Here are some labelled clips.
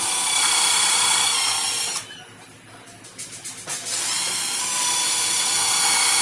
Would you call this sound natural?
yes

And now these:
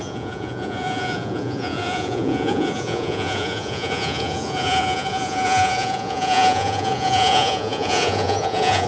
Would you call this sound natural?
no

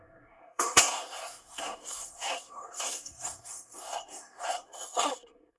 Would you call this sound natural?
no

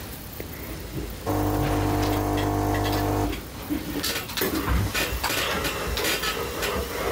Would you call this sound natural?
yes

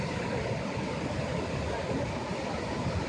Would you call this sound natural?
yes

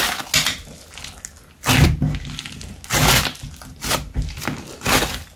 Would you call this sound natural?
yes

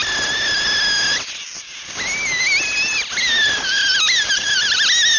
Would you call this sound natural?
yes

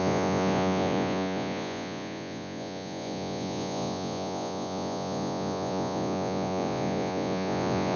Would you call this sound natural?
no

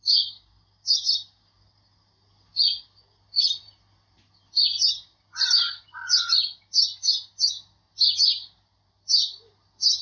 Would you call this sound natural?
yes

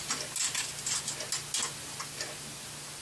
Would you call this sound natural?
yes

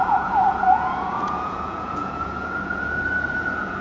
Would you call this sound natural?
no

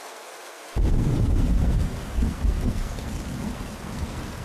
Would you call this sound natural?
no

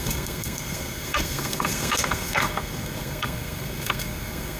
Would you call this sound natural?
no